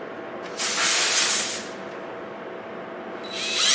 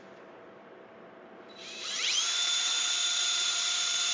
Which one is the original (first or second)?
first